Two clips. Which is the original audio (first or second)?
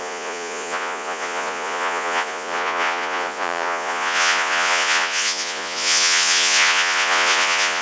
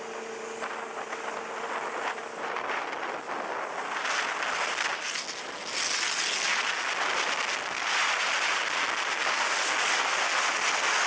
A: second